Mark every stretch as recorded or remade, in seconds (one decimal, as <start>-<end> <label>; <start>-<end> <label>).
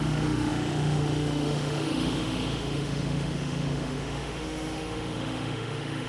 0.0-6.1 remade